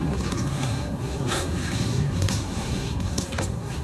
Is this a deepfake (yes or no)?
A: yes